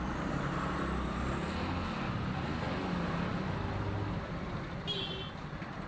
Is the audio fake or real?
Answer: real